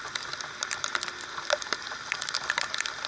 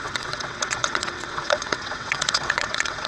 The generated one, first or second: second